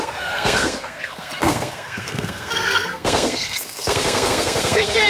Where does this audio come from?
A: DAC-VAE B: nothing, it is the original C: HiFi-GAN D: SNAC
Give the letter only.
D